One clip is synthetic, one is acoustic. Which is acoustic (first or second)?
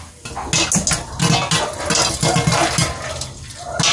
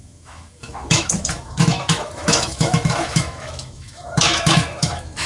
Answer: first